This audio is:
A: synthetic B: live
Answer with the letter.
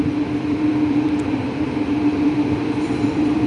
A